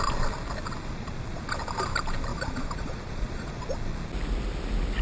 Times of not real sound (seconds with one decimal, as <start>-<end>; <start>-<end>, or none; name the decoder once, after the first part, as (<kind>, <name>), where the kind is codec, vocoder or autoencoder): 2.3-3.6 (vocoder, Vocos)